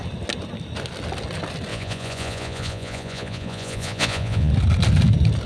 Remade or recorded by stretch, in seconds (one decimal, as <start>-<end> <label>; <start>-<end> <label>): 0.0-1.7 recorded; 1.7-4.5 remade; 4.5-5.5 recorded